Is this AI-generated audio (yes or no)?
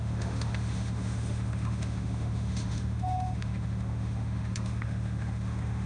yes